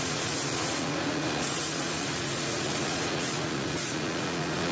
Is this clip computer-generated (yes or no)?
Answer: yes